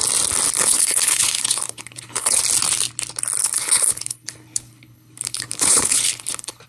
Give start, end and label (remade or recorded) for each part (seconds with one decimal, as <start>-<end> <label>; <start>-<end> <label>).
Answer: 0.0-0.6 recorded; 0.6-2.4 remade; 2.4-3.4 recorded; 3.4-6.7 remade